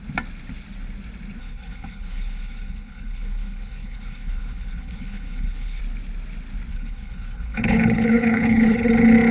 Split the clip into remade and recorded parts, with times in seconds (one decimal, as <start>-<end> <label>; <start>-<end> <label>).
0.0-1.4 recorded; 1.4-5.8 remade; 5.8-6.7 recorded; 6.7-8.9 remade; 8.9-9.3 recorded